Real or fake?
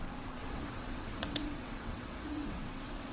fake